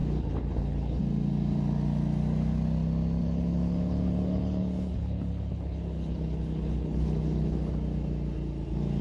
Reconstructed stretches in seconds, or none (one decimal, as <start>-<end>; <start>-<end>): 0.0-1.0; 3.2-7.7